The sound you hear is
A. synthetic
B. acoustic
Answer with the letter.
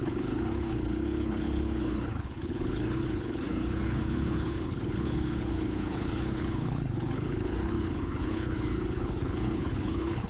A